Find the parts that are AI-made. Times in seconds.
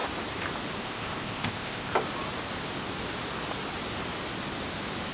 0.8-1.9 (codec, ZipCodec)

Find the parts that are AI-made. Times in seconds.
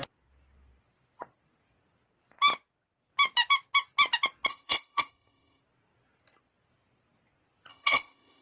4.5-5.6 (codec, ZipCodec); 7.7-8.4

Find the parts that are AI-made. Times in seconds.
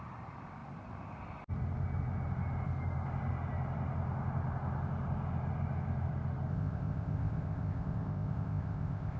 6.5-9.2 (codec, ZipCodec)